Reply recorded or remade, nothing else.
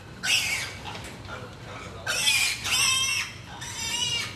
recorded